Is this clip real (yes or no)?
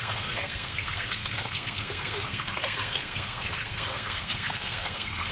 no